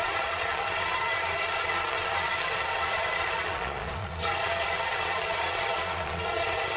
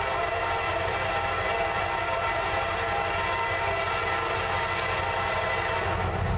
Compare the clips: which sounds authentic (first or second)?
second